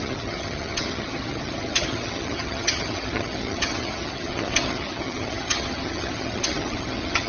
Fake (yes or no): yes